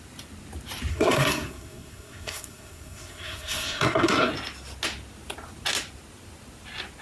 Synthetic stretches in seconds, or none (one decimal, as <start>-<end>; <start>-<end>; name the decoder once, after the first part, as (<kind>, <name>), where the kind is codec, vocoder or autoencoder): 0.9-4.3 (codec, SNAC)